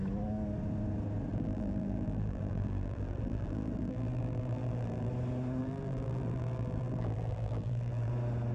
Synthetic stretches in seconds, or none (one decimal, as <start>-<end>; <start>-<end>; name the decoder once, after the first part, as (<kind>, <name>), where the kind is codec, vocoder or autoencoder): 1.3-5.1 (vocoder, BigVGAN v2); 5.6-8.1